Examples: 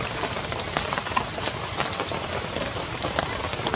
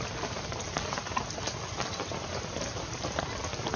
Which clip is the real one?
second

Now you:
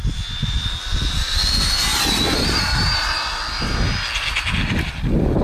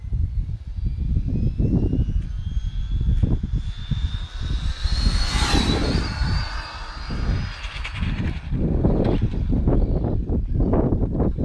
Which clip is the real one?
first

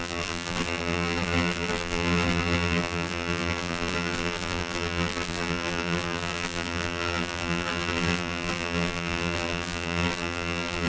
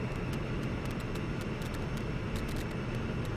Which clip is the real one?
second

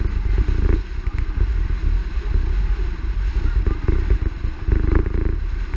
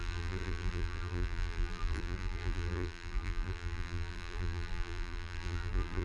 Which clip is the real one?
first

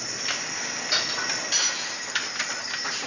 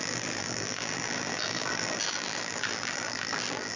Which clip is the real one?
first